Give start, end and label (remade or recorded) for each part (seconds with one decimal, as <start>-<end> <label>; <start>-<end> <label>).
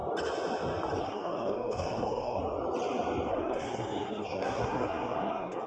0.0-1.0 recorded; 1.0-2.4 remade; 2.4-3.3 recorded; 3.3-5.7 remade